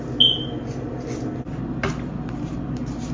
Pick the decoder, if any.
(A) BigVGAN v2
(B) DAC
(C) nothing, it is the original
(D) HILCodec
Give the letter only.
C